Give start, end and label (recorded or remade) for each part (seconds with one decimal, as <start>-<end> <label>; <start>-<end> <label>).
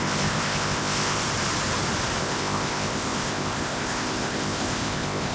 0.0-1.2 remade; 1.2-2.2 recorded; 2.2-5.3 remade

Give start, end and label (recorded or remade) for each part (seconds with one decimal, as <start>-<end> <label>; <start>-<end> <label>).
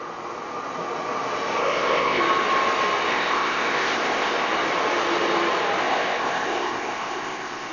0.0-1.6 recorded; 1.6-2.2 remade; 2.2-3.1 recorded; 3.1-4.5 remade; 4.5-5.8 recorded; 5.8-7.7 remade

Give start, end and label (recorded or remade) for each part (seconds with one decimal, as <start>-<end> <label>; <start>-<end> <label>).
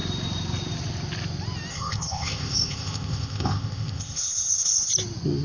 0.0-1.7 recorded; 1.7-4.9 remade; 4.9-5.4 recorded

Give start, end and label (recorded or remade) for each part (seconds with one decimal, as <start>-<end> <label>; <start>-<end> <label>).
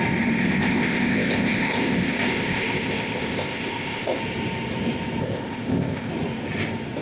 0.0-0.4 recorded; 0.4-4.2 remade; 4.2-5.2 recorded; 5.2-6.1 remade; 6.1-7.0 recorded